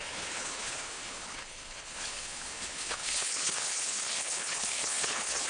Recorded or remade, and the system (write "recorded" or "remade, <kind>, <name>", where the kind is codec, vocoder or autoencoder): remade, codec, HILCodec